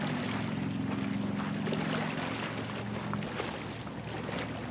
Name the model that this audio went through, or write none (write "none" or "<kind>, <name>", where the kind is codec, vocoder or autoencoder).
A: none